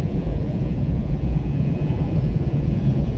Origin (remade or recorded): remade